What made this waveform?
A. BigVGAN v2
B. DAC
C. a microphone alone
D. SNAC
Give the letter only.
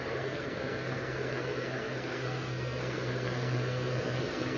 D